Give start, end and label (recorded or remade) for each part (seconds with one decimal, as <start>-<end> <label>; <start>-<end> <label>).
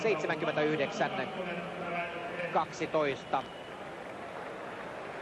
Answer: 0.0-5.2 recorded